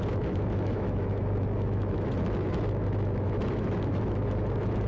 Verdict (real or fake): fake